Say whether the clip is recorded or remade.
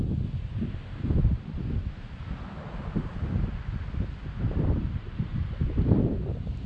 recorded